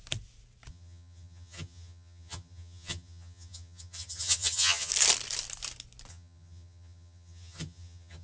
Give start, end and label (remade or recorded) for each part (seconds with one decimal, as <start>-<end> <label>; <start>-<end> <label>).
0.0-0.7 recorded; 0.7-4.9 remade; 4.9-6.1 recorded; 6.1-8.2 remade